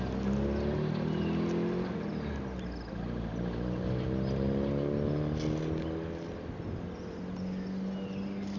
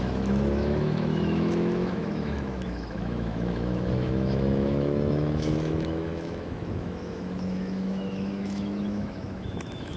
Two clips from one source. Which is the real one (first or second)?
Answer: first